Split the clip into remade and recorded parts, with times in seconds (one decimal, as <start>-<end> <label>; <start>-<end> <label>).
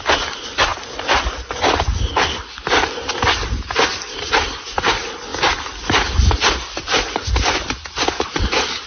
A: 0.0-8.9 recorded